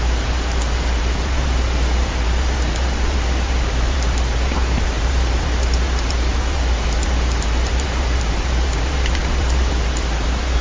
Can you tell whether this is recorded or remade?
remade